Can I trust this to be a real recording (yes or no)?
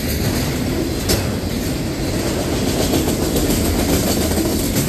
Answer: yes